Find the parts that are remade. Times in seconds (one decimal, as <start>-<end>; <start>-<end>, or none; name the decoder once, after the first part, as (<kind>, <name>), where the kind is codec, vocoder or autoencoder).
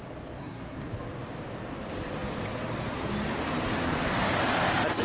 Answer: 0.4-0.9 (codec, SNAC)